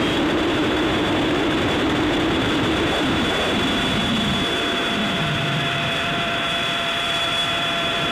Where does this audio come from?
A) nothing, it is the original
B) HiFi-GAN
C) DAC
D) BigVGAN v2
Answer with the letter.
D